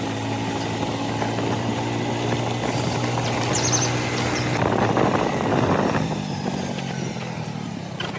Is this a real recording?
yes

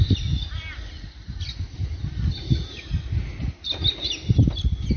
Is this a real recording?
yes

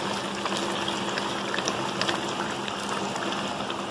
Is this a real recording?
yes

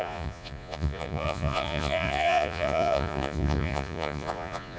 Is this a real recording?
no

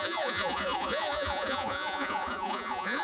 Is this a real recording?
no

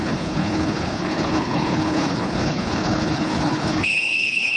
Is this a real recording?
no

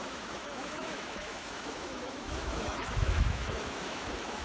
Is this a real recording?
no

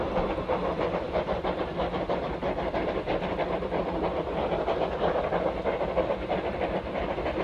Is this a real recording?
no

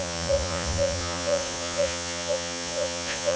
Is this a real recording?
no